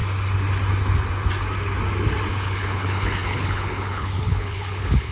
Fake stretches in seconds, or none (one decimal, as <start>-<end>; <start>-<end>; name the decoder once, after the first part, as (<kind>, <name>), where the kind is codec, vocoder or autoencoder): 2.3-5.1 (codec, HILCodec)